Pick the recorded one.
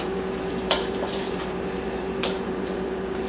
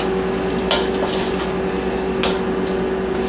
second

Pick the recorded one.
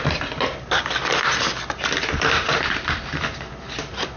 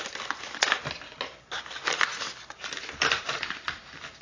second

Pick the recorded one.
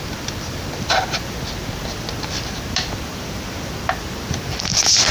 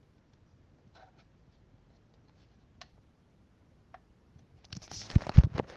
second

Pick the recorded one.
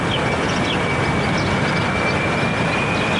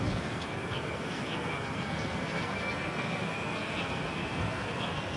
first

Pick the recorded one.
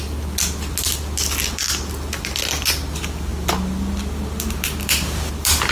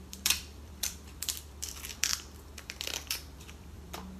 first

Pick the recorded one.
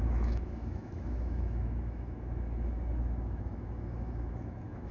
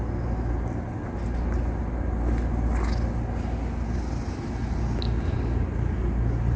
second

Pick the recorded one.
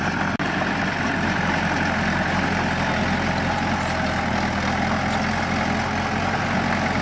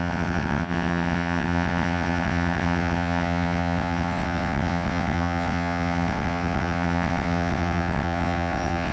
first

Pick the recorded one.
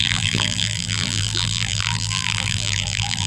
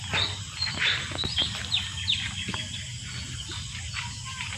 second